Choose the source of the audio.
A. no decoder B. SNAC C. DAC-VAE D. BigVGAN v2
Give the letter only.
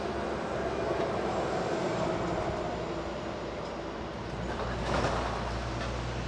A